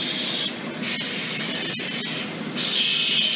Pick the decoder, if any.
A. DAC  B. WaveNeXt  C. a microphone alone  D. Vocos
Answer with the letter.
C